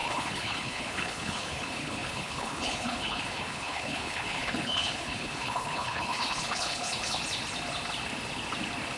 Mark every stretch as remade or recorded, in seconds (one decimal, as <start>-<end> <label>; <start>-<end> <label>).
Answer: 0.0-7.2 remade; 7.2-9.0 recorded